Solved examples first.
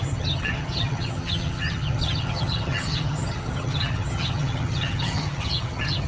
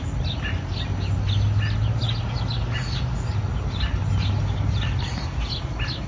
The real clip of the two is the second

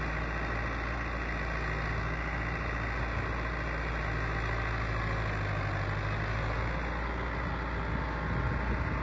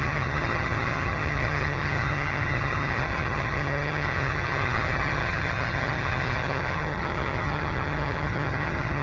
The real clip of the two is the first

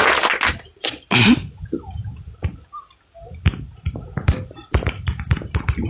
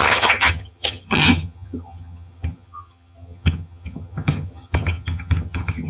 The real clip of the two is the first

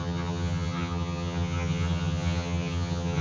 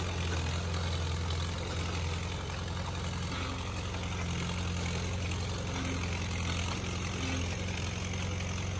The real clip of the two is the second